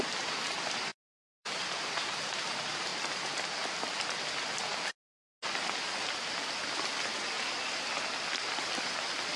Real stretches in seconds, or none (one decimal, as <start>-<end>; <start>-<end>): 0.0-0.9; 1.8-9.4